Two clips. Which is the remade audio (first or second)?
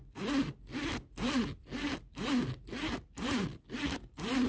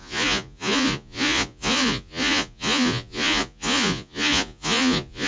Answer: second